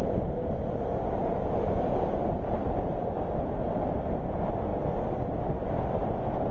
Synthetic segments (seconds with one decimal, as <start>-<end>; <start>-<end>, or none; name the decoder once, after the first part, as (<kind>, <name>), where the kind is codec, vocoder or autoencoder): 1.2-3.0 (vocoder, BigVGAN v2)